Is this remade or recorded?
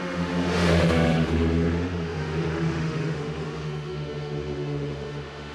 remade